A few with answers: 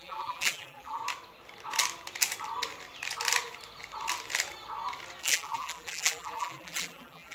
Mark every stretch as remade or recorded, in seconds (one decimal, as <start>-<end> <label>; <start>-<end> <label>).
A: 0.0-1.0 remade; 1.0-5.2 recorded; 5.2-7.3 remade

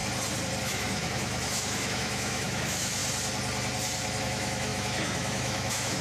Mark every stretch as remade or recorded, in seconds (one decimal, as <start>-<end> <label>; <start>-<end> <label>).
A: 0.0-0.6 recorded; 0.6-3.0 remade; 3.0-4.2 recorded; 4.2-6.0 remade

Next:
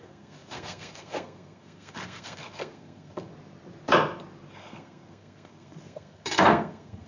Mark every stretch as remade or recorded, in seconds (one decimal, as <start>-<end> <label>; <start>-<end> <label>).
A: 0.0-3.3 remade; 3.3-4.5 recorded; 4.5-7.1 remade

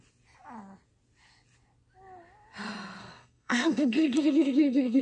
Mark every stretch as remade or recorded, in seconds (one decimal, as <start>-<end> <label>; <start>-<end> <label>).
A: 0.0-3.0 recorded; 3.0-5.0 remade

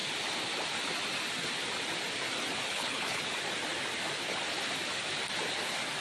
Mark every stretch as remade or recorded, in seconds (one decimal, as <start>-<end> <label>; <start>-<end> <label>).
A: 0.0-2.7 recorded; 2.7-3.2 remade; 3.2-6.0 recorded

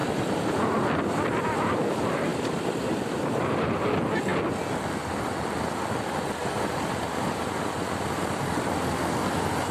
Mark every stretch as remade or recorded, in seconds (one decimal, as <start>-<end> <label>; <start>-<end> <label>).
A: 0.0-1.1 remade; 1.1-2.3 recorded; 2.3-3.9 remade; 3.9-6.4 recorded; 6.4-8.8 remade; 8.8-9.7 recorded

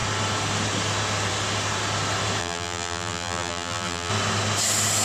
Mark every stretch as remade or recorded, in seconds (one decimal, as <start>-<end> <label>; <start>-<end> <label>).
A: 0.0-2.4 recorded; 2.4-4.1 remade; 4.1-5.0 recorded